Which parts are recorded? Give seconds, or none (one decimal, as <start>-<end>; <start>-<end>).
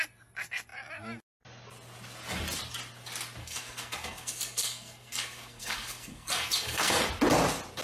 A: 0.0-3.4; 7.0-7.8